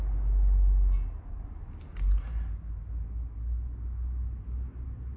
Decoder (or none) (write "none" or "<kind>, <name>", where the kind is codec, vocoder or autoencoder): none